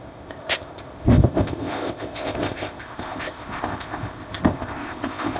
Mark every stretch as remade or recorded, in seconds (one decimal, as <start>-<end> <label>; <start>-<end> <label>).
0.0-5.4 remade